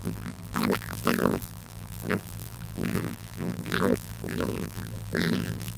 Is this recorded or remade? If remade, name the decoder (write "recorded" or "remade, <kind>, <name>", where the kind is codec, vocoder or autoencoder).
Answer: remade, vocoder, BigVGAN v2